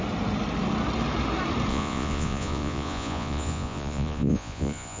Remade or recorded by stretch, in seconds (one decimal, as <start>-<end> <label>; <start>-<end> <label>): 0.0-1.7 recorded; 1.7-5.0 remade